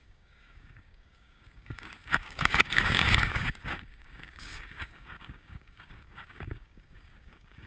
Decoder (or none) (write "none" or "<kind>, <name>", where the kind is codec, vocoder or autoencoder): codec, DAC